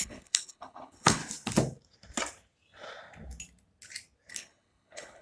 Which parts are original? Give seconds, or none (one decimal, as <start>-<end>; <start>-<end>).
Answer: 1.2-4.3